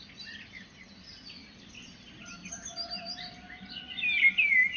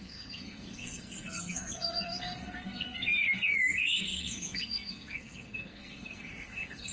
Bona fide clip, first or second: first